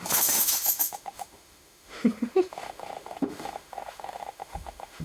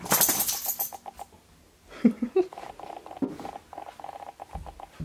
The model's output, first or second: first